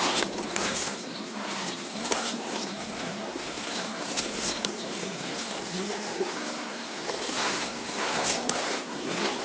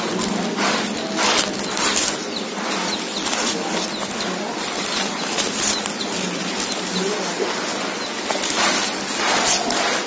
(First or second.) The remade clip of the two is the first